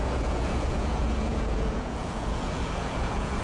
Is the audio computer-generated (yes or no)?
yes